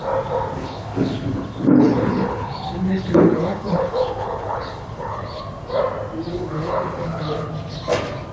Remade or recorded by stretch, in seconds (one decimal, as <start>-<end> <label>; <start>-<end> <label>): 0.0-0.6 recorded; 0.6-5.4 remade; 5.4-6.3 recorded; 6.3-7.5 remade; 7.5-8.3 recorded